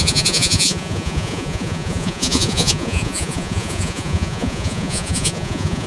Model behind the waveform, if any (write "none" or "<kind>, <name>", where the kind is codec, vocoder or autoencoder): vocoder, Vocos